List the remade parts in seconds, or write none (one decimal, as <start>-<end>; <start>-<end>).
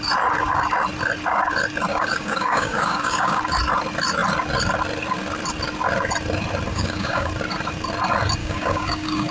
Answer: 1.9-3.4; 6.7-7.3; 8.4-9.3